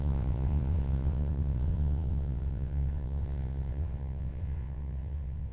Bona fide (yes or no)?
no